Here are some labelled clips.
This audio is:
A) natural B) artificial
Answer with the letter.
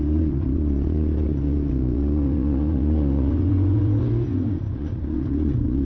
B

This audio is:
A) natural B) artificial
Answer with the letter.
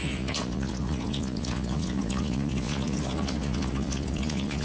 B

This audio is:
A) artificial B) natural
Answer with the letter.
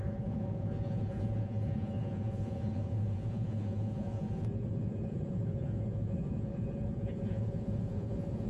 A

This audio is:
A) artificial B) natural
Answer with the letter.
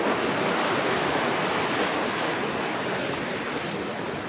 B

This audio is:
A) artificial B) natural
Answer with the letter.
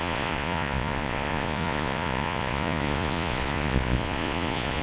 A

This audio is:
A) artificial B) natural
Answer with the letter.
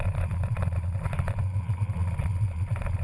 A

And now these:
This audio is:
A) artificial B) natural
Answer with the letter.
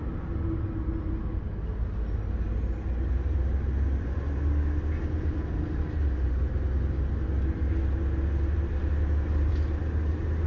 B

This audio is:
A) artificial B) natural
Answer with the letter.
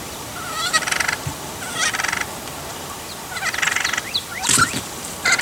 B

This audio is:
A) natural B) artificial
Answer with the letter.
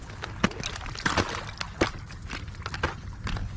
A